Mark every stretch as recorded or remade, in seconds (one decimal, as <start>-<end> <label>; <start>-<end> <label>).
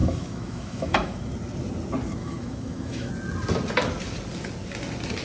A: 0.0-1.3 remade; 1.3-2.2 recorded; 2.2-3.1 remade; 3.1-5.2 recorded